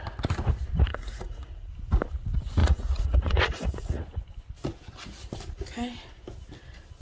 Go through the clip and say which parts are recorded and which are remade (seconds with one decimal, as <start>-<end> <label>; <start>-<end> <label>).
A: 0.0-0.9 recorded; 0.9-1.7 remade; 1.7-2.6 recorded; 2.6-4.0 remade; 4.0-7.0 recorded